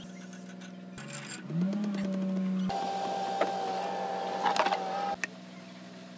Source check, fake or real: real